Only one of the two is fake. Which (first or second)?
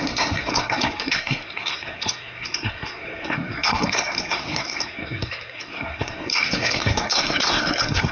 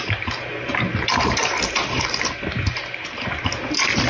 first